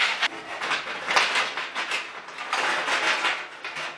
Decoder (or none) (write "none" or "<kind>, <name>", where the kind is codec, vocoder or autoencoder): none